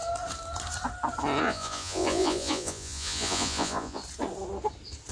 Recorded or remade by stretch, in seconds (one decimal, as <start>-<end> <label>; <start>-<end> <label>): 0.0-1.4 recorded; 1.4-4.0 remade; 4.0-5.1 recorded